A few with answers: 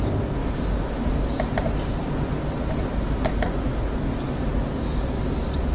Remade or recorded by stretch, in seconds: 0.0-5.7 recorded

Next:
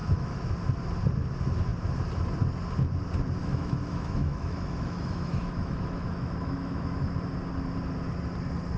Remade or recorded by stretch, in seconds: 0.0-0.5 remade; 0.5-3.4 recorded; 3.4-7.1 remade; 7.1-8.8 recorded

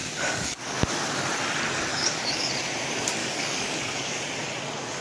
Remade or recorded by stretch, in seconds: 0.0-0.8 remade; 0.8-1.9 recorded; 1.9-2.5 remade; 2.5-3.2 recorded; 3.2-4.2 remade; 4.2-5.0 recorded

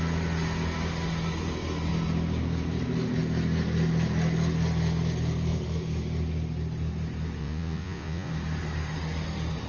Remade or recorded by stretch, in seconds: 0.0-7.4 recorded; 7.4-8.3 remade; 8.3-9.7 recorded

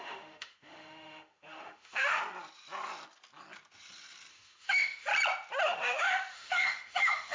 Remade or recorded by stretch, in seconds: 0.0-2.2 remade; 2.2-4.3 recorded; 4.3-5.1 remade; 5.1-5.6 recorded; 5.6-7.3 remade

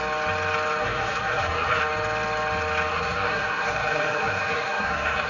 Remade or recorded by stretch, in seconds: 0.0-0.8 recorded; 0.8-1.8 remade; 1.8-2.9 recorded; 2.9-5.3 remade